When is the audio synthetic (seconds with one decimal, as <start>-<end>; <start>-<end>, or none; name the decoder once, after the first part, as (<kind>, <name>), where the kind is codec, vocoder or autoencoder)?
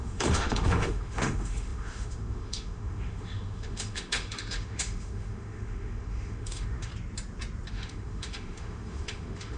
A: 0.0-6.9 (autoencoder, DAC-VAE); 7.7-9.6